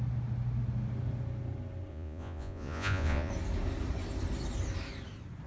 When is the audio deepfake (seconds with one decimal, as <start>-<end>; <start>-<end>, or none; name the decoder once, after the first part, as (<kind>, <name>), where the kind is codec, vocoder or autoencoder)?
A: 1.9-3.3 (vocoder, Vocos)